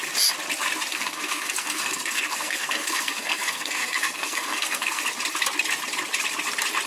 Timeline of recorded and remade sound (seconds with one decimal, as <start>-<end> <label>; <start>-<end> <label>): 0.0-0.9 recorded; 0.9-5.0 remade; 5.0-6.9 recorded